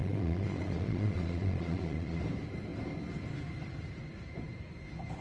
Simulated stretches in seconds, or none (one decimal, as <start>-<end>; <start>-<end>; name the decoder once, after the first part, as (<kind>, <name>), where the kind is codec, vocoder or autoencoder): 0.0-2.2 (vocoder, Vocos)